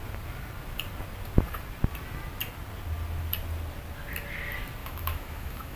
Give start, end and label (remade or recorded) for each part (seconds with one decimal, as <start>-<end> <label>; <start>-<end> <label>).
0.0-4.8 recorded; 4.8-5.8 remade